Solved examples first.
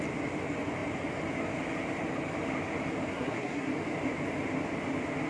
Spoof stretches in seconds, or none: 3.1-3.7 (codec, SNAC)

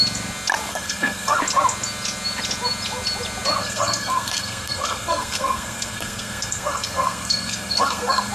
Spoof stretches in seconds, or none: 0.7-1.4 (codec, SNAC); 3.6-8.3